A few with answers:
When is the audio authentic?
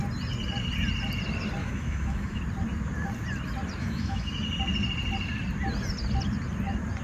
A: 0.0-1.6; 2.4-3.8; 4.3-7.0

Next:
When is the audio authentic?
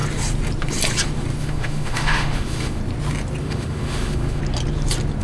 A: 0.0-1.4; 2.8-3.4; 4.4-5.2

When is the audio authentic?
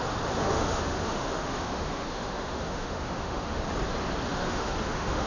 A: 0.0-0.4; 3.6-4.3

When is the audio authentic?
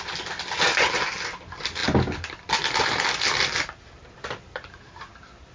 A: 0.0-5.5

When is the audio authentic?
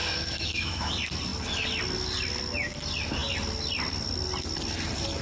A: 0.9-5.2